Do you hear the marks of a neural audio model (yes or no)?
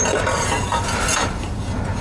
yes